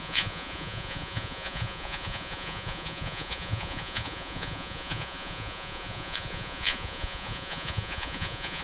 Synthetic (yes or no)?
yes